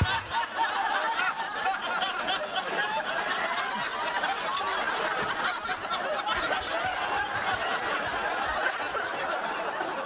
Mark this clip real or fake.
real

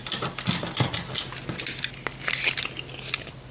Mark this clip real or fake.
real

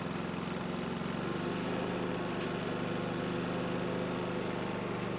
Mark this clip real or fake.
real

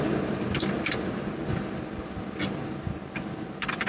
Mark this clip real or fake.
real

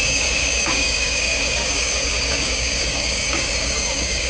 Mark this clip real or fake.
fake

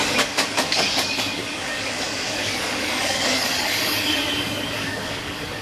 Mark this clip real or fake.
fake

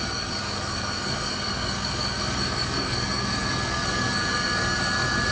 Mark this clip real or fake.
fake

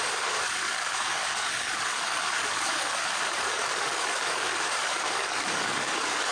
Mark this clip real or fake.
fake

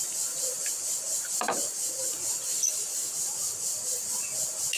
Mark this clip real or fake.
real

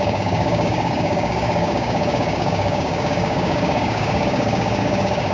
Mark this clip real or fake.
fake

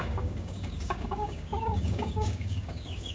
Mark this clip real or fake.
fake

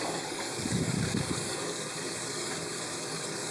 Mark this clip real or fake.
fake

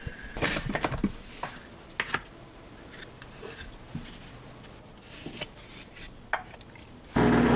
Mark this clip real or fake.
real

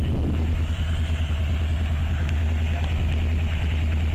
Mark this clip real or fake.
real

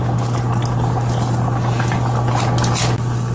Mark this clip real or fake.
real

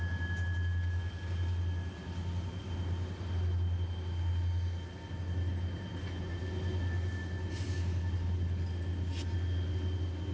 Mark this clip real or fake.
real